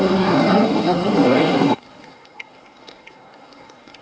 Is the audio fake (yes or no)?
yes